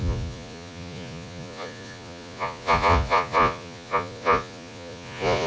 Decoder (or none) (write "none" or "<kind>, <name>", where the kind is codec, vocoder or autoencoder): vocoder, Vocos